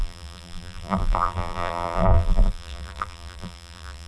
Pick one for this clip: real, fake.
fake